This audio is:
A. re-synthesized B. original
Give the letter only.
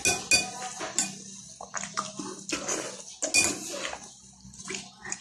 B